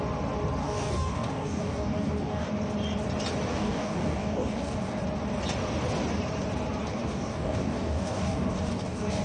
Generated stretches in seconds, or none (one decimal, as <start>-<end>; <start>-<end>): 0.6-2.5; 3.5-5.0; 6.9-9.2